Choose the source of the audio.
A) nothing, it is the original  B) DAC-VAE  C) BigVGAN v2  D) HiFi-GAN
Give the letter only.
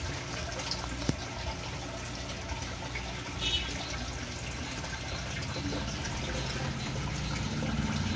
A